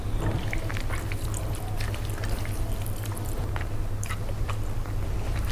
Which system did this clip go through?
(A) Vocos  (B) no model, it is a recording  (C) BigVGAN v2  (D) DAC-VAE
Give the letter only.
C